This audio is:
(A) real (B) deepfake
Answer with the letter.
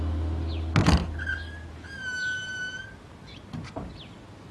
A